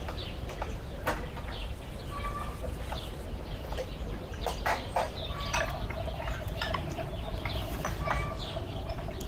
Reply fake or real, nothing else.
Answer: fake